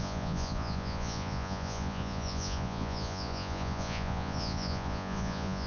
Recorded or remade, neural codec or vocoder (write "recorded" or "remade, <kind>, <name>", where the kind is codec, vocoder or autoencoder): remade, vocoder, Vocos